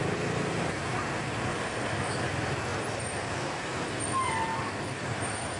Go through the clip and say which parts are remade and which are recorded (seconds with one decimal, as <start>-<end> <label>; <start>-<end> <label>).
0.0-1.5 recorded; 1.5-2.3 remade; 2.3-4.5 recorded; 4.5-5.1 remade; 5.1-5.6 recorded